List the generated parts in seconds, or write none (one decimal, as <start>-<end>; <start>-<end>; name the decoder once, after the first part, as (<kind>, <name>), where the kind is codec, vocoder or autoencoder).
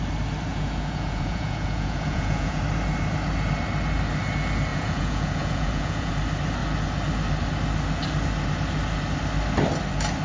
0.5-2.6 (vocoder, Vocos); 4.7-6.1